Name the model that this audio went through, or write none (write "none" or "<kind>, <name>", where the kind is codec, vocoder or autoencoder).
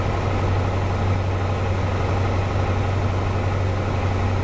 none